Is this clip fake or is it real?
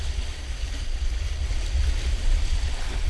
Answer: real